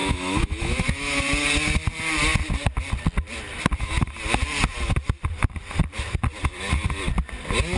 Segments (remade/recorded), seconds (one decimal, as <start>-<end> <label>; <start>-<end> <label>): 0.0-1.2 remade; 1.2-7.8 recorded